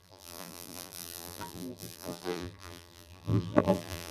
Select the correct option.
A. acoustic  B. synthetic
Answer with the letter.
B